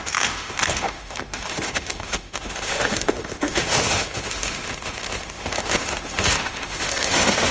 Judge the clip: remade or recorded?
remade